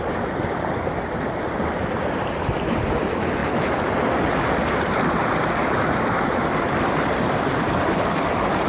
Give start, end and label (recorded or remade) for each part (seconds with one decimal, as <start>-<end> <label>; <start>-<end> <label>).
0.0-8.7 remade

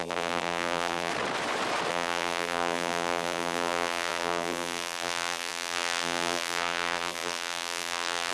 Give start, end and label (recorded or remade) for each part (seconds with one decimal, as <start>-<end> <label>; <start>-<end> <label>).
0.0-1.1 remade; 1.1-1.9 recorded; 1.9-8.3 remade

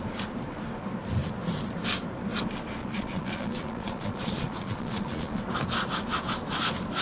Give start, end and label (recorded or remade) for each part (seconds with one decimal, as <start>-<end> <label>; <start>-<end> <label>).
0.0-2.8 recorded; 2.8-5.4 remade; 5.4-7.0 recorded

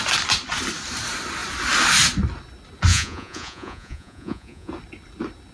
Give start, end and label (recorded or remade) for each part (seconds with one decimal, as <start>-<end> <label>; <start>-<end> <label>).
0.0-2.9 recorded; 2.9-4.7 remade; 4.7-5.5 recorded

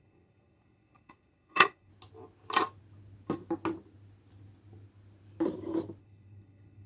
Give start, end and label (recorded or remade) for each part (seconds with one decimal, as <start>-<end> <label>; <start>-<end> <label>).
0.0-1.9 remade; 1.9-6.0 recorded; 6.0-6.9 remade

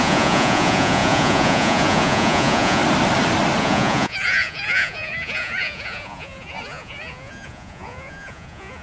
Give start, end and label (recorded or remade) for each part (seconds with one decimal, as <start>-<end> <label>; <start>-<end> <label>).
0.0-2.8 remade; 2.8-3.6 recorded; 3.6-8.8 remade

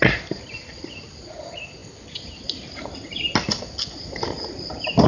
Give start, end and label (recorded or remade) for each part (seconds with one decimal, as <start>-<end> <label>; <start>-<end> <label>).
0.0-1.8 remade; 1.8-4.0 recorded; 4.0-5.1 remade

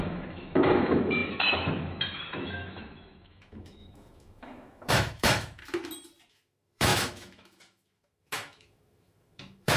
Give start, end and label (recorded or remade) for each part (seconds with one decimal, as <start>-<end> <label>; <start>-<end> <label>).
0.0-5.6 remade; 5.6-6.3 recorded; 6.3-9.8 remade